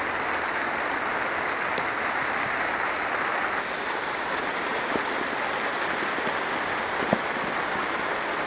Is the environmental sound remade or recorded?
recorded